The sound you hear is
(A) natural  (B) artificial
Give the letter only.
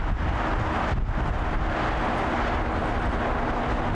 A